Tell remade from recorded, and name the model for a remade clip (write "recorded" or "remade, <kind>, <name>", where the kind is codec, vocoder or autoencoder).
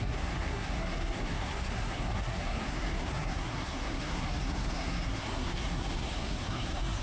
remade, codec, SNAC